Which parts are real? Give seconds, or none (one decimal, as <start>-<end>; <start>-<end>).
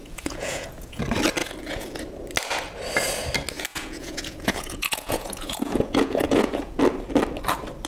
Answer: 1.0-1.4; 2.0-3.7; 6.8-7.9